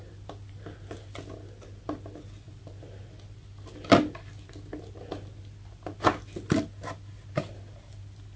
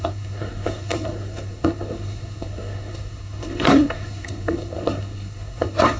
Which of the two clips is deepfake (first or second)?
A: second